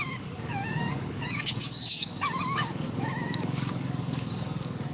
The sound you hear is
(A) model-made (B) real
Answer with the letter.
A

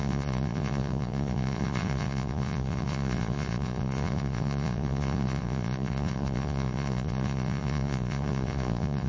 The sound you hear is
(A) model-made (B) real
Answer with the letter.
A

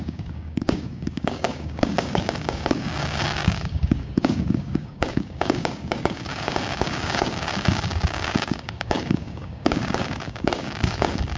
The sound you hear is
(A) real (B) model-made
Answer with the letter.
B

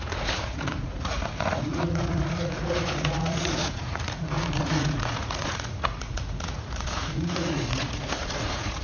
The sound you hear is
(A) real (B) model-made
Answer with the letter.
B